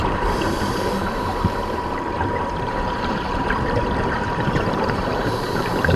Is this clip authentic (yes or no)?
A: no